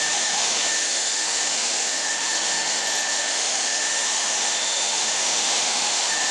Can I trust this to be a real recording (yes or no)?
no